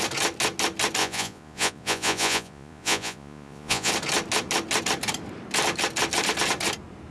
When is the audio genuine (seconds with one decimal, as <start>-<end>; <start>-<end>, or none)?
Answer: 0.0-1.0; 3.9-7.1